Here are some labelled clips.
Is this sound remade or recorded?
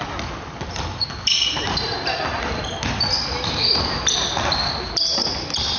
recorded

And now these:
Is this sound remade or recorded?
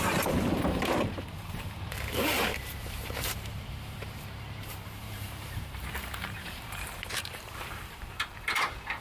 remade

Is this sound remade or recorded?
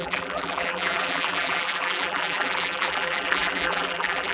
remade